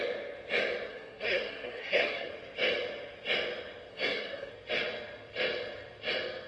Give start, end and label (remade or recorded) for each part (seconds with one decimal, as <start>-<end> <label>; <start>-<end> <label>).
0.0-0.9 recorded; 0.9-2.3 remade; 2.3-3.9 recorded; 3.9-4.5 remade; 4.5-6.5 recorded